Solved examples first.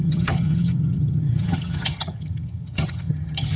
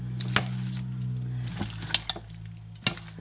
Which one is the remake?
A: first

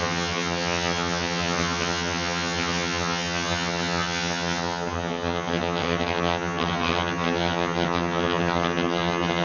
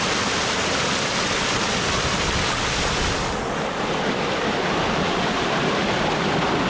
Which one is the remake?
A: first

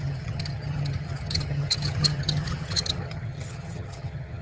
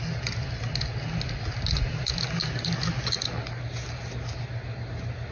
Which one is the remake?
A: first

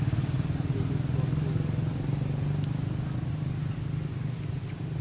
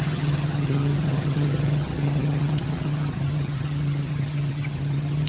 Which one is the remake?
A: second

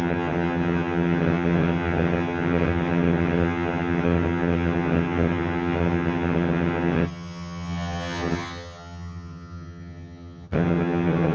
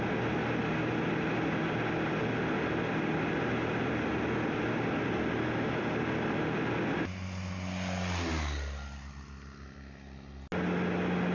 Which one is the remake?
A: first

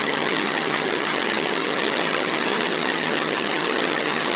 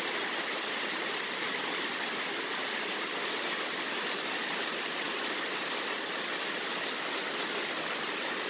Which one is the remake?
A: first